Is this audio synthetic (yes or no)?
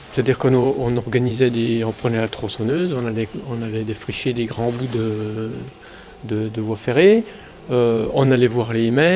yes